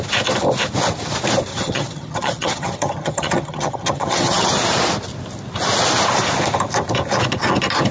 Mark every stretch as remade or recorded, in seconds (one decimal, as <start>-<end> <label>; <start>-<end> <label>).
0.0-1.5 recorded; 1.5-4.5 remade; 4.5-7.9 recorded